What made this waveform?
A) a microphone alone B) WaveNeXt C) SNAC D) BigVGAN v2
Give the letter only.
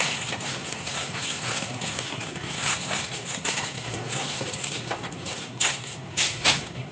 C